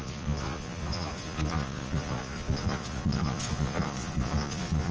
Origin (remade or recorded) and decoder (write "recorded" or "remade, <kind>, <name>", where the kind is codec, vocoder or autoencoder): remade, vocoder, Vocos